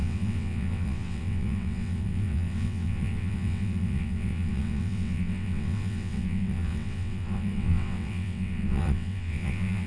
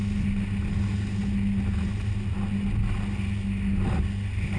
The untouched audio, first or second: second